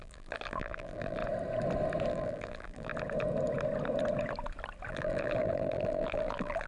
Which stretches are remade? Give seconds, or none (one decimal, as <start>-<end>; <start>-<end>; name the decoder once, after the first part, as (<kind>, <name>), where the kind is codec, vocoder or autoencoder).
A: 0.0-1.2 (vocoder, BigVGAN v2); 2.1-2.9; 4.9-6.7

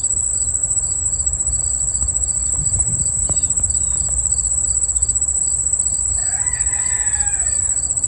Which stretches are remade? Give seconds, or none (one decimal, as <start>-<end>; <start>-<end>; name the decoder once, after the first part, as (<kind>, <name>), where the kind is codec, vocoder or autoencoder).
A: 0.6-1.6 (vocoder, BigVGAN v2); 2.4-3.7

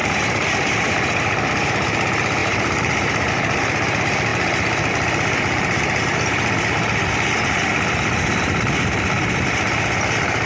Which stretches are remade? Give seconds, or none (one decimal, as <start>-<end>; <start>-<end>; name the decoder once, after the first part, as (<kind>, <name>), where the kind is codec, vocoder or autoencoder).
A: 0.0-1.2 (vocoder, BigVGAN v2); 2.4-3.3; 7.7-9.2

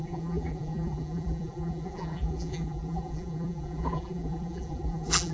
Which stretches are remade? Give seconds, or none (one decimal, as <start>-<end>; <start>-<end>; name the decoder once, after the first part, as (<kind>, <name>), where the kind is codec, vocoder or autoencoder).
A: 0.0-5.3 (vocoder, BigVGAN v2)